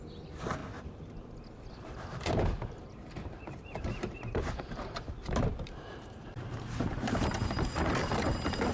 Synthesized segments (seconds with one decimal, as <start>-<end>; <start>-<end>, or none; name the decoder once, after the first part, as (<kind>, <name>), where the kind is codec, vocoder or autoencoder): 0.0-0.6 (vocoder, BigVGAN v2); 1.7-8.7